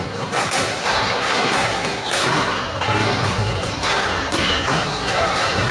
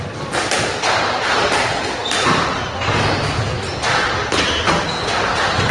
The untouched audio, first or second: second